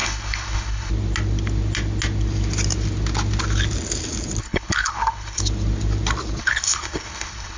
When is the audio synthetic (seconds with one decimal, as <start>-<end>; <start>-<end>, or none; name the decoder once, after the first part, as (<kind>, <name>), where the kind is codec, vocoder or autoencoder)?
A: 0.0-0.9 (codec, HILCodec); 4.4-5.4; 6.4-7.6